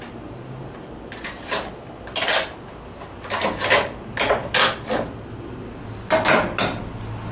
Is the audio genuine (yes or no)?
yes